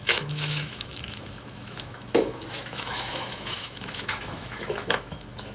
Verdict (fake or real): fake